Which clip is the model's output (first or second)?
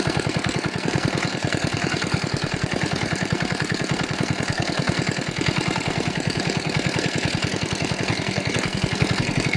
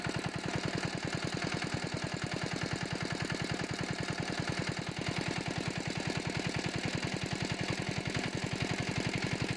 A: first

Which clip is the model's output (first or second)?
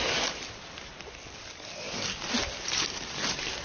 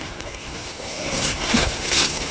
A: second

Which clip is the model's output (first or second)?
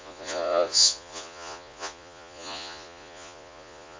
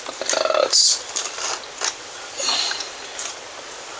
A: first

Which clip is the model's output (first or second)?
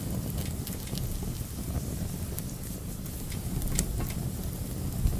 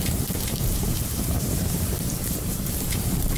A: second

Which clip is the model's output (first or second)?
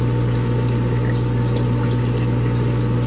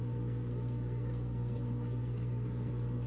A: second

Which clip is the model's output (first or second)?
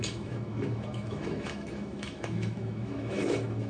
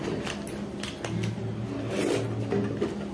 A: first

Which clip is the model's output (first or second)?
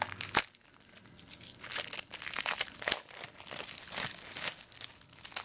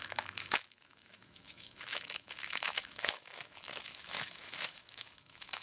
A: second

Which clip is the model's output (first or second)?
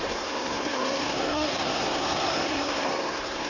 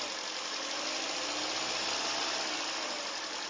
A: first